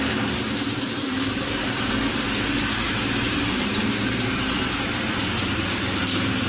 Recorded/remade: remade